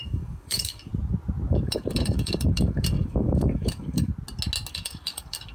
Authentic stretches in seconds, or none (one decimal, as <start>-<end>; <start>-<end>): 0.9-1.5; 4.1-4.7